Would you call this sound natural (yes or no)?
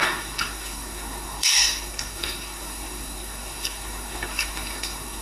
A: no